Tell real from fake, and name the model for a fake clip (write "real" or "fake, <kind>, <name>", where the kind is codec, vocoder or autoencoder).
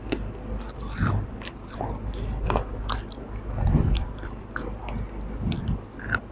real